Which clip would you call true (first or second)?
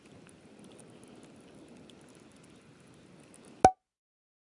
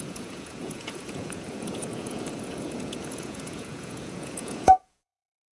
first